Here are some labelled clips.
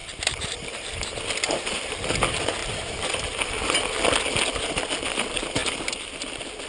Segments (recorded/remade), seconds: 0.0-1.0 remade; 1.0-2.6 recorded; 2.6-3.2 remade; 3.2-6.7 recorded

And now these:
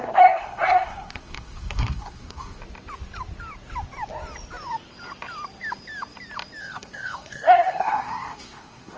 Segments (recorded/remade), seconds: 0.0-2.6 remade; 2.6-6.6 recorded; 6.6-9.0 remade